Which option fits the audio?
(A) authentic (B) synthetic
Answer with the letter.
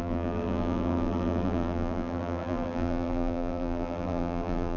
B